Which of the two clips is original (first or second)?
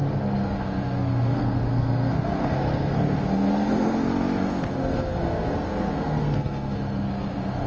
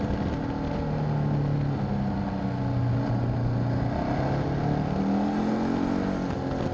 second